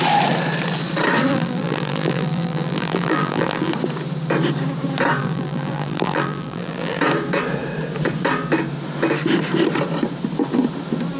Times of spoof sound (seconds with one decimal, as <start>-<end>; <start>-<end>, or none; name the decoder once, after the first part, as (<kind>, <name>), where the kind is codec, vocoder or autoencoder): 1.3-3.7 (vocoder, BigVGAN v2); 5.2-7.0